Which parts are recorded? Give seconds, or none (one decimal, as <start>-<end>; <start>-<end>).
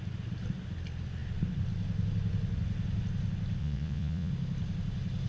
0.0-3.6; 4.3-5.3